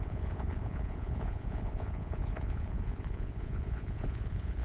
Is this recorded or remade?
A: remade